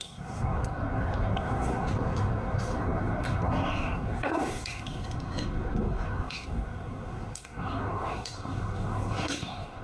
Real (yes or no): no